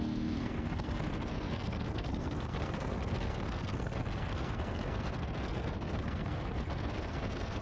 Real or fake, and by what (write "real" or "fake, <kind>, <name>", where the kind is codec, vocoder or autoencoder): fake, codec, SNAC